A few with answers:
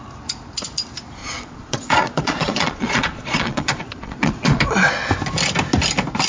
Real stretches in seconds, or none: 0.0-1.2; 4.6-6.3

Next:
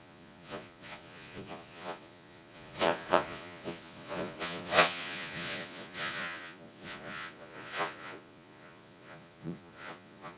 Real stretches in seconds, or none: none